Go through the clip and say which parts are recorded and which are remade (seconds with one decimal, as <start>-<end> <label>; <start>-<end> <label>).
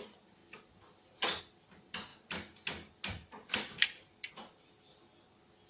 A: 0.0-5.7 recorded